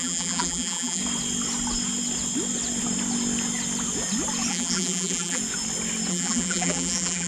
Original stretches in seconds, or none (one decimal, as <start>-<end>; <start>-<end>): 1.0-4.5; 5.4-6.1